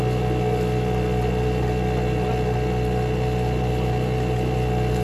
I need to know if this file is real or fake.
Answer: real